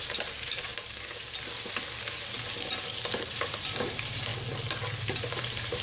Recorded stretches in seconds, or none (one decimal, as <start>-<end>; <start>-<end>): 0.7-2.8; 4.3-5.0

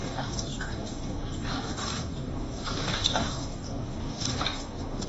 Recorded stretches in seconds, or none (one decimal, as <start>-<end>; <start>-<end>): none

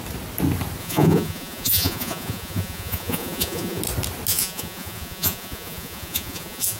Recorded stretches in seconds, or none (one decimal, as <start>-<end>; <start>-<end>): 0.0-0.8; 3.8-4.3

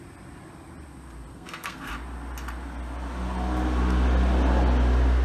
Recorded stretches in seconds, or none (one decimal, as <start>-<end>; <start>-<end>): 0.0-1.3; 1.9-5.2

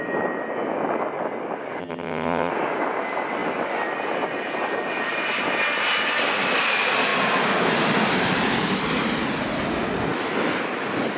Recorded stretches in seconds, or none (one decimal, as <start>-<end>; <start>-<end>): 0.0-1.8; 2.5-11.2